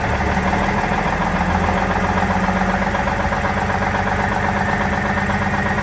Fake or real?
real